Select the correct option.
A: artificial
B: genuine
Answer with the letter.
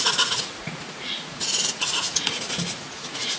A